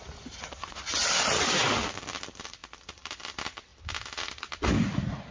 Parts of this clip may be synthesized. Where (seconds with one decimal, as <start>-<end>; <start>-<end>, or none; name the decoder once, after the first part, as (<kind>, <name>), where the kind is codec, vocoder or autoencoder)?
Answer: none